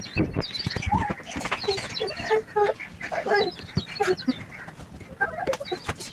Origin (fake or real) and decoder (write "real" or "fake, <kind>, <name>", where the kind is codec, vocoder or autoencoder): real